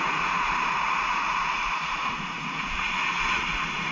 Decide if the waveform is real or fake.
fake